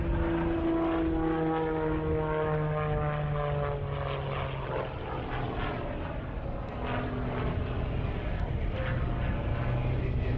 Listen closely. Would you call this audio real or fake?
real